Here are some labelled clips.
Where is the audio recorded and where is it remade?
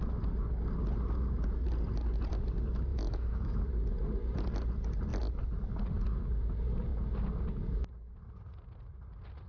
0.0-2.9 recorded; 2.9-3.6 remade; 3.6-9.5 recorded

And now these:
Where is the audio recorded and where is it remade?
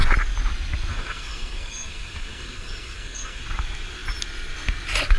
0.0-0.9 recorded; 0.9-3.4 remade; 3.4-5.2 recorded